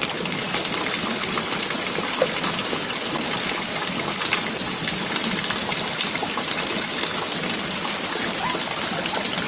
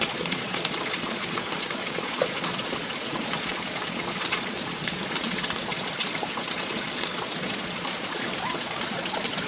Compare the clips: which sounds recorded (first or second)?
first